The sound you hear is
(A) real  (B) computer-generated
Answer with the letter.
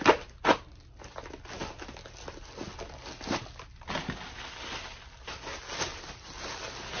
A